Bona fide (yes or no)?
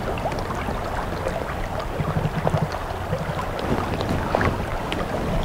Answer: yes